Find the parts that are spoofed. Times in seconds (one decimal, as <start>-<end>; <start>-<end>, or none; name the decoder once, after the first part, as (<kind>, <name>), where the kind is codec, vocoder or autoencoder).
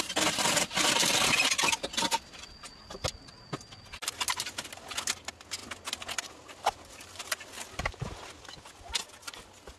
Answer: none